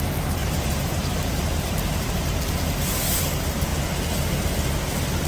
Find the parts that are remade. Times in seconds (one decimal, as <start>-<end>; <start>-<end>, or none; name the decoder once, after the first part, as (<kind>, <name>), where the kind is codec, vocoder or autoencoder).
0.4-2.1 (vocoder, BigVGAN v2)